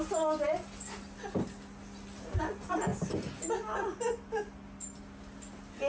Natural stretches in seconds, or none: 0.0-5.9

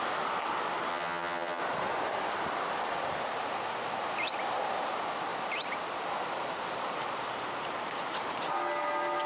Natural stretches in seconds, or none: 0.0-0.9; 1.6-9.3

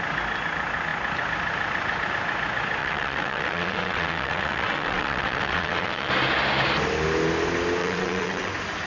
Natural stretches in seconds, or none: 0.0-2.8; 6.1-7.8; 8.5-8.9